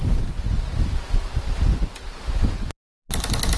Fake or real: real